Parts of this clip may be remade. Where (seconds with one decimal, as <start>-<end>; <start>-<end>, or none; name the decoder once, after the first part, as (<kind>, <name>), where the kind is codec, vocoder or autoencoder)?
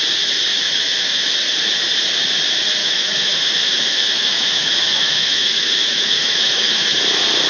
0.5-1.3 (autoencoder, DAC-VAE); 2.8-7.0